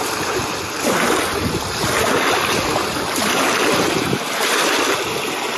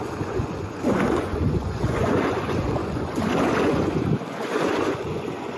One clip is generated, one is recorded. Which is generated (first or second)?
second